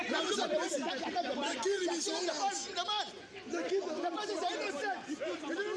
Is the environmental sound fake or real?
real